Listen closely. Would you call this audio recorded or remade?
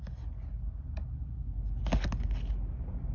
recorded